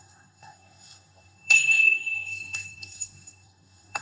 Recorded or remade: remade